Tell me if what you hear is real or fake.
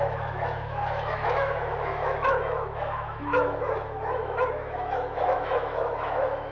fake